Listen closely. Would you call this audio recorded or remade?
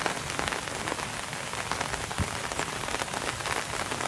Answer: recorded